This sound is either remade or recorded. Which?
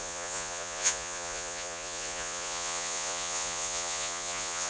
remade